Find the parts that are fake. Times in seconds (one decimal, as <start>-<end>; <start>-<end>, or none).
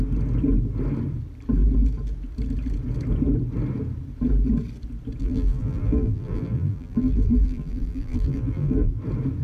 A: 5.2-8.9